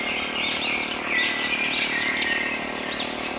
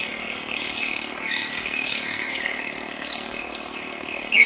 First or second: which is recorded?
first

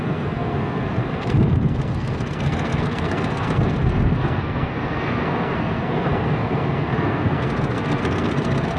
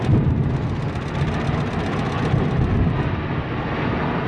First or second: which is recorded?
second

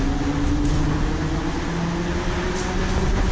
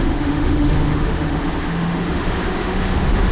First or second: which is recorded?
first